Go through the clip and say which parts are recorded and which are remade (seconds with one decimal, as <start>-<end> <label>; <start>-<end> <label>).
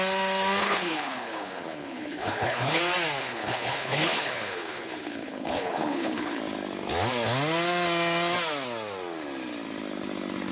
0.0-0.6 recorded; 0.6-2.8 remade; 2.8-3.2 recorded; 3.2-6.4 remade; 6.4-10.5 recorded